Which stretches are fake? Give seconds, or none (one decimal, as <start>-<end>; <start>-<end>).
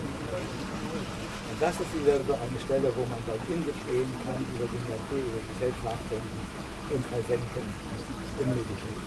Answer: 5.0-6.9